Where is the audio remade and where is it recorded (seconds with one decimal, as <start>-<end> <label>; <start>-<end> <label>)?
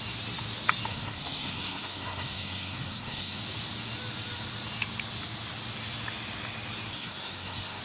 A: 0.0-0.9 recorded; 0.9-3.4 remade; 3.4-6.9 recorded; 6.9-7.8 remade